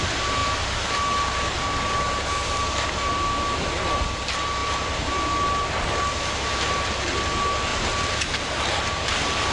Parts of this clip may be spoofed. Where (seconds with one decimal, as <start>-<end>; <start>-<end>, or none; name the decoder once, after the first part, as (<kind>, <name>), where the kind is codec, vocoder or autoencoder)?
none